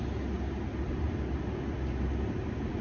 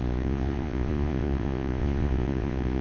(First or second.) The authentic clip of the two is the first